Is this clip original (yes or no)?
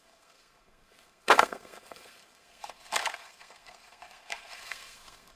no